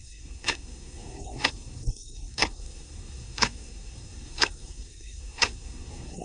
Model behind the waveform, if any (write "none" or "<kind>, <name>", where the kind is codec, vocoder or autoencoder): codec, SNAC